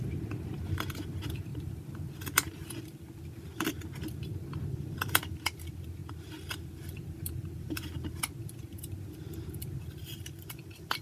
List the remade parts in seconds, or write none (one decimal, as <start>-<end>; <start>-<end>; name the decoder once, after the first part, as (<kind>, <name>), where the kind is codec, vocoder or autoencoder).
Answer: 1.5-2.1 (vocoder, BigVGAN v2)